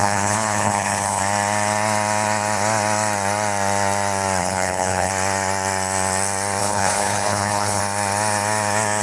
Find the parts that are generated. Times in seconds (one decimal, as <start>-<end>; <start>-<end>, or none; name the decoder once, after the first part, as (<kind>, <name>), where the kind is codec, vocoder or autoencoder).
0.0-1.2 (codec, HILCodec); 4.4-5.1; 6.6-7.8